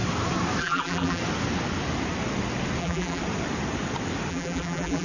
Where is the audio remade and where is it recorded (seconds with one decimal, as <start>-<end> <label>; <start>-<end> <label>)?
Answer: 0.0-0.6 recorded; 0.6-1.2 remade; 1.2-2.8 recorded; 2.8-3.2 remade; 3.2-4.3 recorded; 4.3-5.0 remade